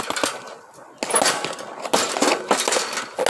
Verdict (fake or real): real